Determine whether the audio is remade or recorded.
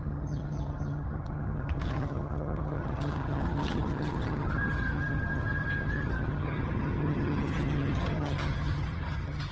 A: remade